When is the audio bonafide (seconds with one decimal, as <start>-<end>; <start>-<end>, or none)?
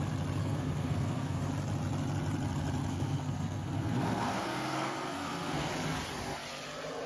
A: 0.0-0.4; 1.5-2.9; 5.7-7.1